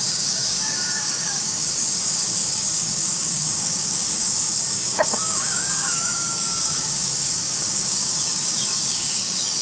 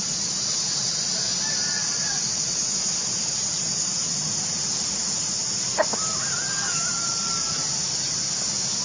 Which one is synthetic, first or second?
first